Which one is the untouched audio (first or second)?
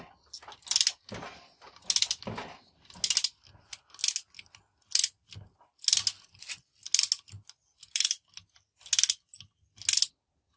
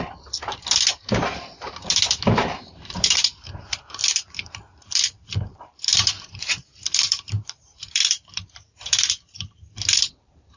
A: first